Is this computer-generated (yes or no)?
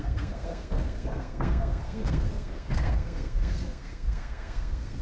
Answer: yes